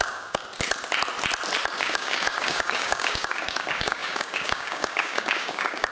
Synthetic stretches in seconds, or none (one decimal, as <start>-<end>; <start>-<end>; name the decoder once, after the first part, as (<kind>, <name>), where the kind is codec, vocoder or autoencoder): 0.0-0.4 (codec, DAC); 1.8-5.9